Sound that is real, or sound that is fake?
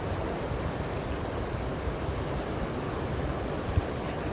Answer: real